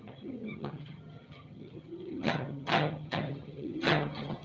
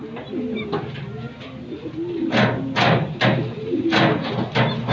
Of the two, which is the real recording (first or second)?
second